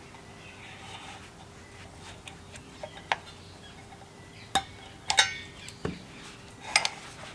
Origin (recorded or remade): recorded